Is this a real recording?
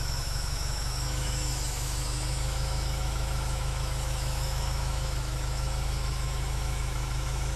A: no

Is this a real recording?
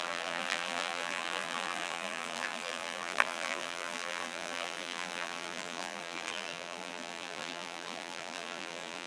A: no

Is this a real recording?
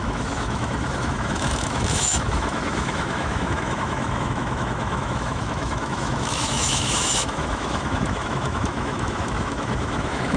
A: no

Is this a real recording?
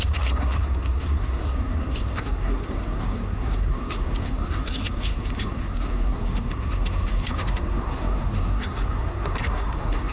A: no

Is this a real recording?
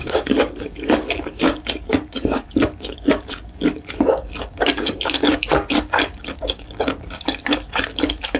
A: no